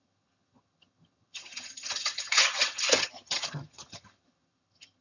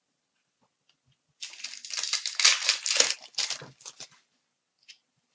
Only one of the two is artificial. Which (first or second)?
first